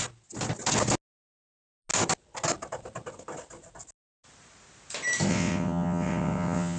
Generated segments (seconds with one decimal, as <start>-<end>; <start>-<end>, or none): 5.3-6.8